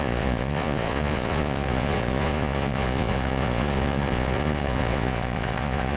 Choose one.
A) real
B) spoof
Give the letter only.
B